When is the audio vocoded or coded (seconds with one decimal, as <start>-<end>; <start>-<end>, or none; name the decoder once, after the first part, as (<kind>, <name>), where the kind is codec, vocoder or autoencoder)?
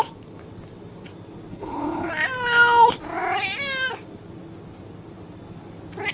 1.5-2.1 (codec, HILCodec)